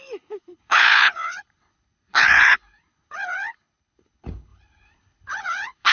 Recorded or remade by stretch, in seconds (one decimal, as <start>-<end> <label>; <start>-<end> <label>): 0.0-5.9 remade